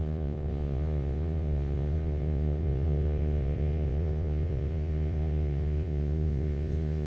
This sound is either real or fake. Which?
fake